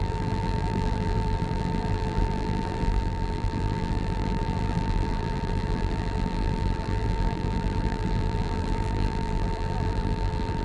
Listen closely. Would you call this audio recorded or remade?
remade